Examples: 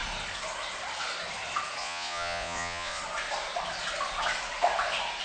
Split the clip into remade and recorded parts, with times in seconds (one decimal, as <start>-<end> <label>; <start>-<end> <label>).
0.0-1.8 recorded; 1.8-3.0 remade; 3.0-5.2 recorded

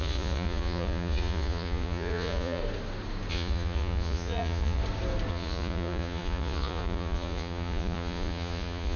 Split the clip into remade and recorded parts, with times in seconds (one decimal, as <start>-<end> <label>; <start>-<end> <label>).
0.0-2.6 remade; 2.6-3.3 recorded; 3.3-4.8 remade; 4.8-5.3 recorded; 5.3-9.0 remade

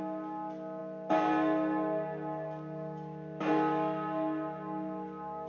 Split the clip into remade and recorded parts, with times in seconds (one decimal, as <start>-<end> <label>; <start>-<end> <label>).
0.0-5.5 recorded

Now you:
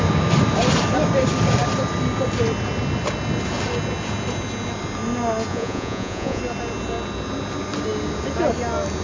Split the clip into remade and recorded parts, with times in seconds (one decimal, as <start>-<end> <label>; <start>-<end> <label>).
0.0-5.5 recorded; 5.5-6.4 remade; 6.4-9.0 recorded

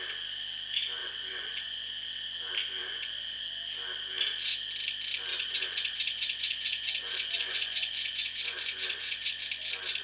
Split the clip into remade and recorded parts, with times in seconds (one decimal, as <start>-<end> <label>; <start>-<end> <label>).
0.0-1.0 recorded; 1.0-1.9 remade; 1.9-2.8 recorded; 2.8-3.4 remade; 3.4-5.3 recorded; 5.3-9.3 remade; 9.3-10.0 recorded